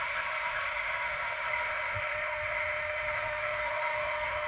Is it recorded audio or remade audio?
remade